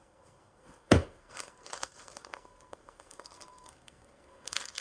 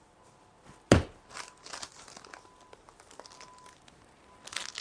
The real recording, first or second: second